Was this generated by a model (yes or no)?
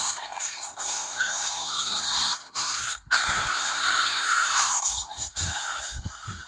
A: yes